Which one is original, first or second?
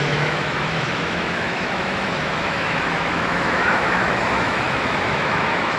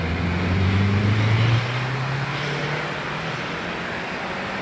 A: second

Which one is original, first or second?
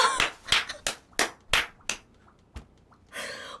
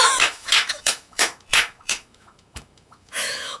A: first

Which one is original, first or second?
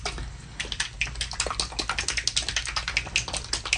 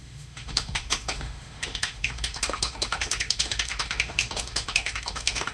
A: first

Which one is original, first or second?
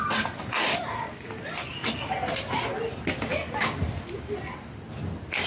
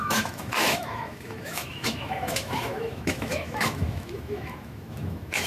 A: first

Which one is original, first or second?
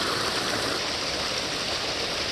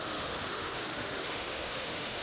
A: first